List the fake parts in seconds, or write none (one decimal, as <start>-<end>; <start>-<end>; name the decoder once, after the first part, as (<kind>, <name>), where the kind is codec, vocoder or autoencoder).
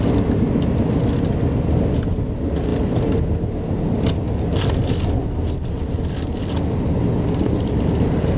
none